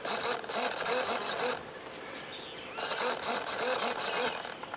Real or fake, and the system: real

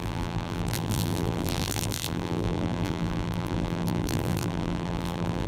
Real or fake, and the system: fake, vocoder, BigVGAN v2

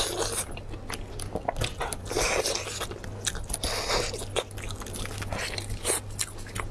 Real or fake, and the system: real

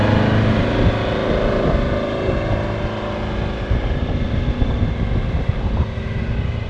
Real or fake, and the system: real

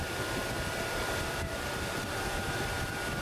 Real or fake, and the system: fake, vocoder, BigVGAN v2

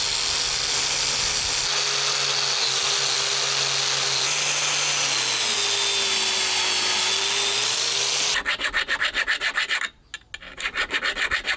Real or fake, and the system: real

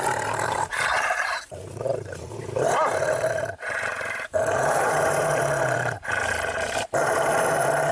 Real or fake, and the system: fake, vocoder, BigVGAN v2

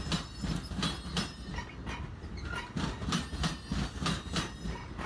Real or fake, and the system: real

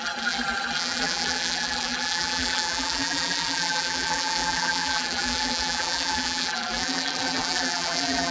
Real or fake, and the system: fake, vocoder, BigVGAN v2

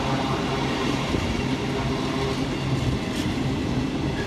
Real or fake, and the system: real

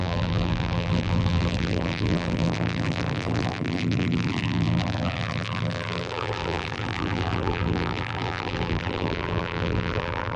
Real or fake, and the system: fake, vocoder, BigVGAN v2